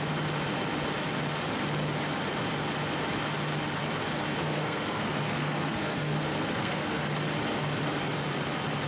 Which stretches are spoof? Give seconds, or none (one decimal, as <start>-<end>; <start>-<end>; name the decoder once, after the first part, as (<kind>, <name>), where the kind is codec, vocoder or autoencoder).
4.4-7.1 (codec, SNAC)